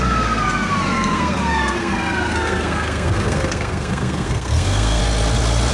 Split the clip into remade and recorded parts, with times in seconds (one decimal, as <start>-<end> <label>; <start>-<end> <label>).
0.0-5.0 remade; 5.0-5.7 recorded